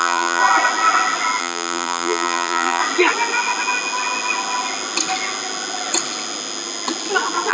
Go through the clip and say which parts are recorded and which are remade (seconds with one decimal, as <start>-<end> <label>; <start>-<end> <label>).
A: 0.0-0.4 remade; 0.4-1.4 recorded; 1.4-2.8 remade; 2.8-7.5 recorded